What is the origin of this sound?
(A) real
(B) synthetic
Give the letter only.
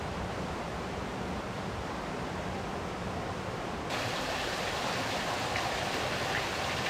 B